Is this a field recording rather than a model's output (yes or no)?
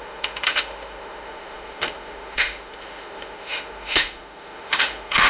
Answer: no